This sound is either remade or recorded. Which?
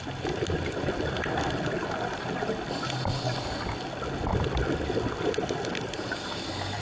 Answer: recorded